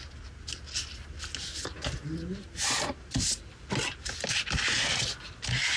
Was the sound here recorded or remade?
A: recorded